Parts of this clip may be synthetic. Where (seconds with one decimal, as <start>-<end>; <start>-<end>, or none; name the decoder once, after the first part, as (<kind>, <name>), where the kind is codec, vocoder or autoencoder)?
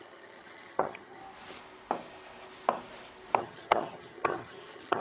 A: 0.0-1.2 (vocoder, HiFi-GAN); 3.4-5.0